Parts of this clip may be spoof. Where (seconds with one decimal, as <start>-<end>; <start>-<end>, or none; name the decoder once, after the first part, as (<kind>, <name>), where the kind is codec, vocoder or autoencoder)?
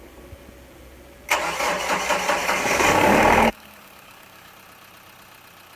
2.4-4.5 (codec, DAC)